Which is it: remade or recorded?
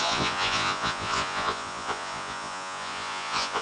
remade